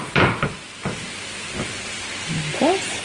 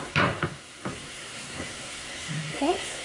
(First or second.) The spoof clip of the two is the second